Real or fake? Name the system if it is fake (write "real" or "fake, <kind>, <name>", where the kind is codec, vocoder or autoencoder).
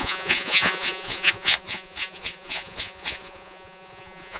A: fake, vocoder, Vocos